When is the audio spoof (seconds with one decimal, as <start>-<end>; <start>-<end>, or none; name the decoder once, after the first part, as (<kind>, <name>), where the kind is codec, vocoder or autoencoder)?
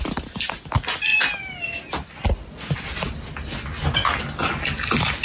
none